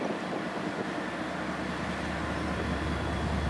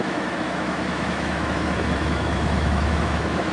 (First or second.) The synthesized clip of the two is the second